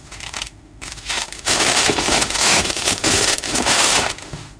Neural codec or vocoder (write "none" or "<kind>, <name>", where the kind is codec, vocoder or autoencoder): autoencoder, DAC-VAE